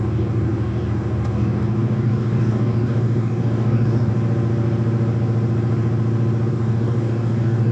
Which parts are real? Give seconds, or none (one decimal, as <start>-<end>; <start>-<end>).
4.1-6.5